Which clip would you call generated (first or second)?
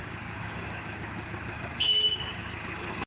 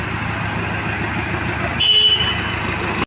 first